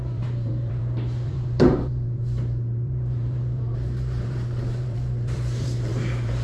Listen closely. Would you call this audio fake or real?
fake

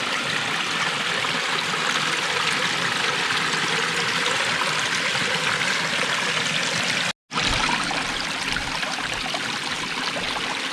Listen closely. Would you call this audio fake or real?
real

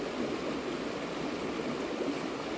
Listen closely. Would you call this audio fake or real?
real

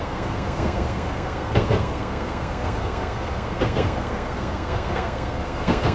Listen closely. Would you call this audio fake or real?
fake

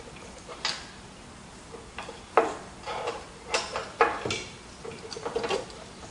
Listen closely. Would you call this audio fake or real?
real